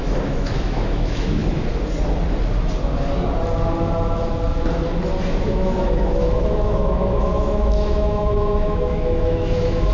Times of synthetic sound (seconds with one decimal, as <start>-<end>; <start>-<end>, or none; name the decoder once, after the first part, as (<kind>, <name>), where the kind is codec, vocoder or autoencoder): 0.0-1.4 (autoencoder, DAC-VAE); 5.4-9.9